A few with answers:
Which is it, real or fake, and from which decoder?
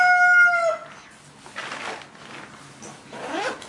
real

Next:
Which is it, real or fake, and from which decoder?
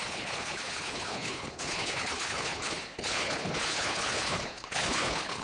fake, codec, HILCodec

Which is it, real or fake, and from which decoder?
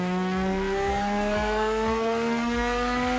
fake, codec, SNAC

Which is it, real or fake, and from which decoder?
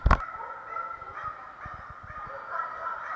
real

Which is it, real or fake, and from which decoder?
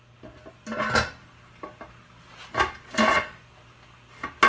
real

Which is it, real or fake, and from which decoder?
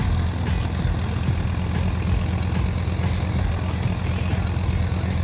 real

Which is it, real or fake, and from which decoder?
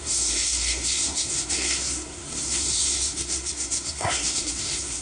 fake, codec, SNAC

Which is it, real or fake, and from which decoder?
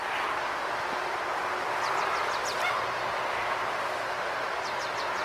real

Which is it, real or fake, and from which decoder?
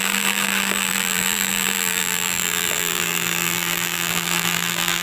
fake, vocoder, BigVGAN v2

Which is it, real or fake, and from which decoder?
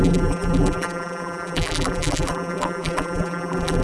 fake, vocoder, BigVGAN v2